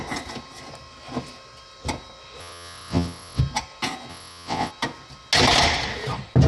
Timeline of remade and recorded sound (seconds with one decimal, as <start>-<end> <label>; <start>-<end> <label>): 0.0-2.4 recorded; 2.4-3.4 remade; 3.4-4.1 recorded; 4.1-4.7 remade; 4.7-6.5 recorded